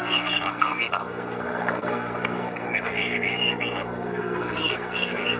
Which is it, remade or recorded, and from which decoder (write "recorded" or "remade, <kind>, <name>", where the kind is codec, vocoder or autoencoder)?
remade, codec, SNAC